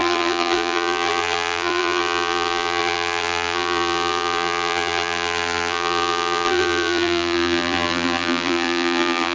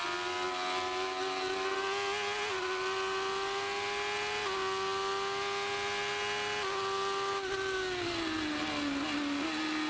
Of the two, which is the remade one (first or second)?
first